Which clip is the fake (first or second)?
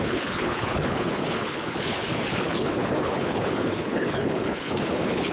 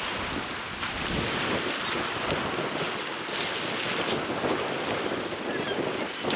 first